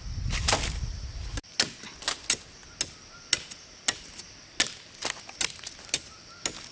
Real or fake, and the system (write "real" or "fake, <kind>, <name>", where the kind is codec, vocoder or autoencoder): real